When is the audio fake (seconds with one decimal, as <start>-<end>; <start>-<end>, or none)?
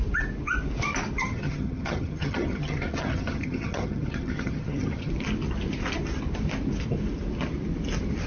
1.2-5.1